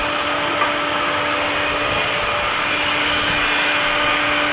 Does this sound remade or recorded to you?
recorded